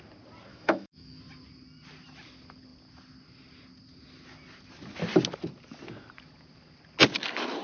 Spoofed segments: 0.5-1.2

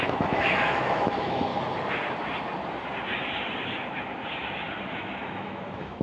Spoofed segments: 0.0-1.5; 4.9-6.0

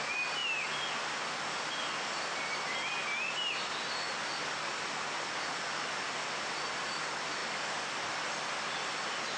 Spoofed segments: none

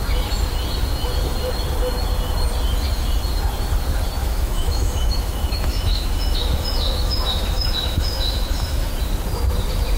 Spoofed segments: 4.2-8.9

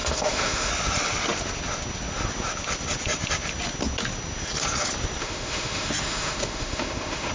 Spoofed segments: 0.0-0.7; 5.2-7.3

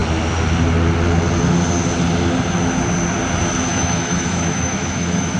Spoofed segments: 3.7-5.4

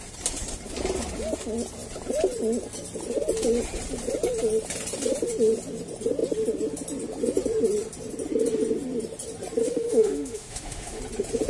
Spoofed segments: 9.6-11.0